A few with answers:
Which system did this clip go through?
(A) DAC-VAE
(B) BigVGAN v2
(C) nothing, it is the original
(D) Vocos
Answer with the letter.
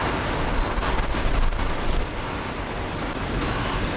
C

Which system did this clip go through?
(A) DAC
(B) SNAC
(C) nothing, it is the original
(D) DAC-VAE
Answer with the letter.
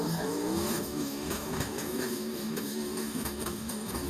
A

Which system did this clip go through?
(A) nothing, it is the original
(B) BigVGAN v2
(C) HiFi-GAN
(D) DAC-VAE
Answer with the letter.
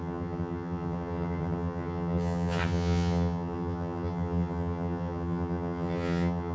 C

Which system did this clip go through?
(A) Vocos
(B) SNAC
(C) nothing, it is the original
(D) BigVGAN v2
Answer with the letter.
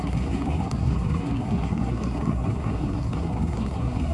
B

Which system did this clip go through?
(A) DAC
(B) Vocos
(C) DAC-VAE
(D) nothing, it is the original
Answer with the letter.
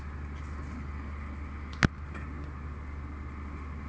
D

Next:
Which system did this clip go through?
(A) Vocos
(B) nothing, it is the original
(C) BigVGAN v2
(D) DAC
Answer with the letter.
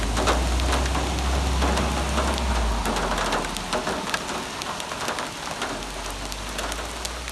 B